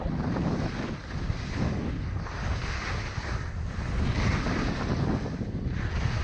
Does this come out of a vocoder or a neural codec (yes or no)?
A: no